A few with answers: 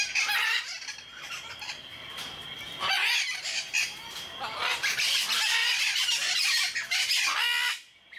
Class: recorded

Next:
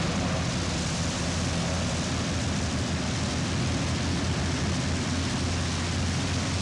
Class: recorded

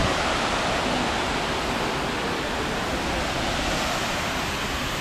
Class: recorded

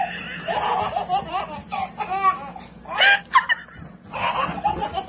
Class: recorded